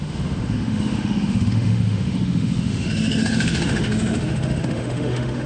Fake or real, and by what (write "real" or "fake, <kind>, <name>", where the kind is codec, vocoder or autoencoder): fake, autoencoder, DAC-VAE